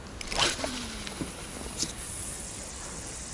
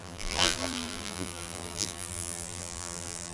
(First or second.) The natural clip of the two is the first